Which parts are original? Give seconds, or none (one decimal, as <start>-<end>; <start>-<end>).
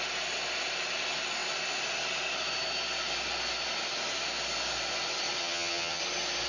0.0-5.4; 6.0-6.5